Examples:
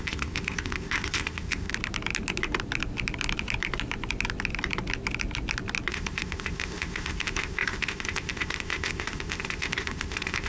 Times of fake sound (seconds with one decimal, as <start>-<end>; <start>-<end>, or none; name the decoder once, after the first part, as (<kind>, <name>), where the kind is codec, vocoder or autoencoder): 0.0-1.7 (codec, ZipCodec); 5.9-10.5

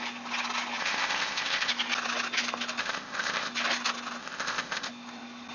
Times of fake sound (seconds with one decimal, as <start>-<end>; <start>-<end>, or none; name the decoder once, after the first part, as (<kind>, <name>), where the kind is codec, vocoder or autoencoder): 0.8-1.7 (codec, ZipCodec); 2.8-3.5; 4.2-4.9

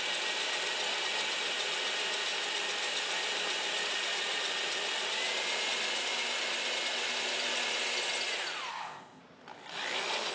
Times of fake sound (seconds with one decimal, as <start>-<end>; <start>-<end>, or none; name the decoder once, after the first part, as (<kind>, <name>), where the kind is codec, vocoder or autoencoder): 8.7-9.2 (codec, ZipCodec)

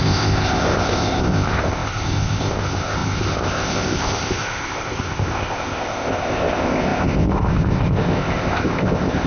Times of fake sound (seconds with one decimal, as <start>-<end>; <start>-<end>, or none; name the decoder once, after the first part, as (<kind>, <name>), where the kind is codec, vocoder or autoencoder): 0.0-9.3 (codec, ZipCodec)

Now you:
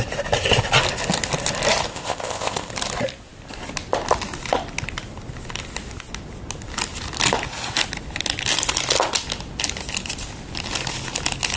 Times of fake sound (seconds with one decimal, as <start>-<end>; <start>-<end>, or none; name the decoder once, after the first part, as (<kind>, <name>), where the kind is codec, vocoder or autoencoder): 1.9-2.7 (codec, ZipCodec)

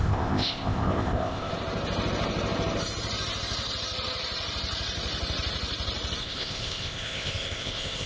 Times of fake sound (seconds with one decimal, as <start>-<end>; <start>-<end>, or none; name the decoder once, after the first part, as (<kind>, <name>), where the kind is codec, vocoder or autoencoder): 0.0-1.5 (codec, ZipCodec); 6.2-8.1

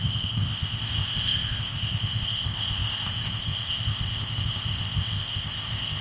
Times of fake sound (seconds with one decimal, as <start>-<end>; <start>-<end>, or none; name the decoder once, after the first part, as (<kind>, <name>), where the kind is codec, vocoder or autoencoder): 0.0-6.0 (codec, ZipCodec)

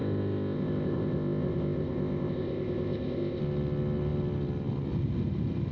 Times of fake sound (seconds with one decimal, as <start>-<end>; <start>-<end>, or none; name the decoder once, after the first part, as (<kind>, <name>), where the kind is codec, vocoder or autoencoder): 0.0-3.4 (codec, ZipCodec)